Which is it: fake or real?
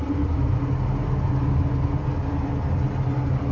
real